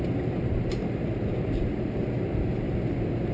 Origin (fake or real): fake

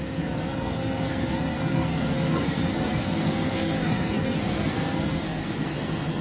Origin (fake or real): fake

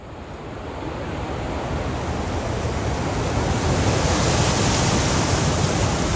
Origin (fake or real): real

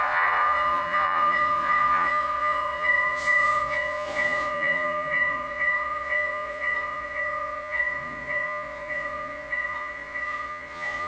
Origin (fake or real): fake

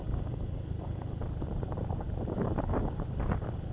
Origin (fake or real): fake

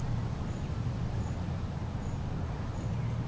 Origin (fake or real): real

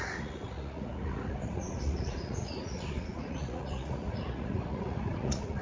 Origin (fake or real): fake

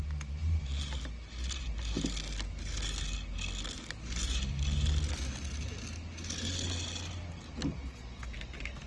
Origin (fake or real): real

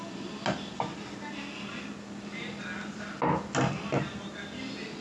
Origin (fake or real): real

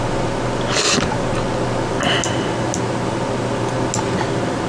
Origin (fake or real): real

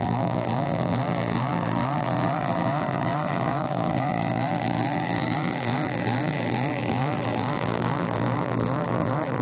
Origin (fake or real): fake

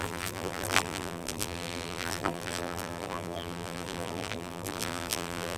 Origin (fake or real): fake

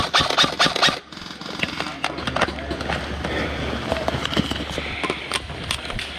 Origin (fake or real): real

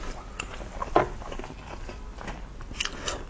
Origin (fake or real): real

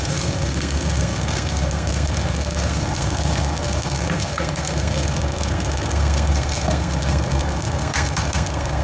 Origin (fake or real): fake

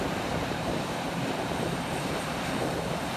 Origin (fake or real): fake